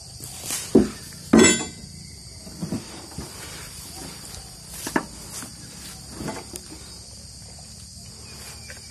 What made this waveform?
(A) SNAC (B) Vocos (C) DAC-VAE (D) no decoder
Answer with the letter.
D